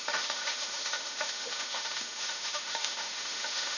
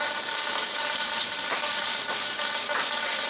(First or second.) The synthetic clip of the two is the first